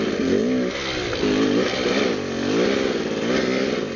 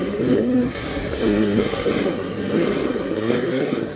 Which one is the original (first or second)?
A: first